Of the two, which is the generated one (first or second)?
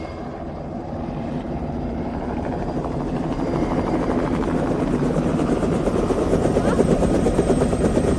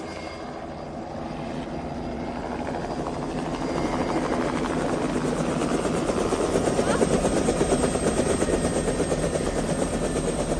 first